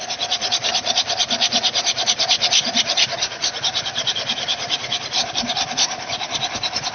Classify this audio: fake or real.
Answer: real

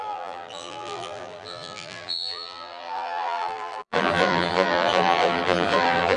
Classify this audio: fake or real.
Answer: fake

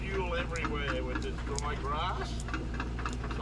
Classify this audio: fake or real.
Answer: real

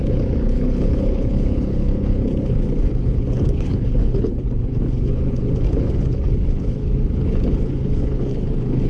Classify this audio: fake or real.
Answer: fake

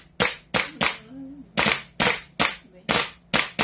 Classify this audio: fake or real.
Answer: real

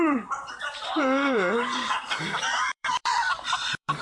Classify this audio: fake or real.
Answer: fake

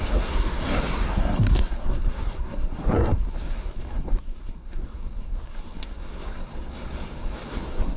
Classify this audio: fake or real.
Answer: fake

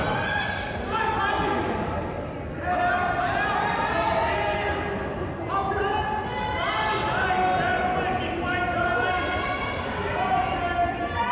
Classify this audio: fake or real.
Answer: real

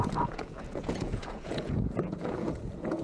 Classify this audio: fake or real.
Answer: fake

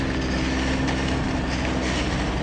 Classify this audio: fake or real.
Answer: real